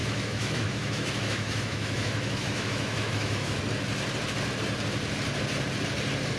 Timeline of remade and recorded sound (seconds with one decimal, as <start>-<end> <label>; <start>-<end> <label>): 0.0-3.6 remade; 3.6-6.4 recorded